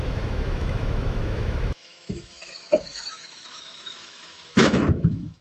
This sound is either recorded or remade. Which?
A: remade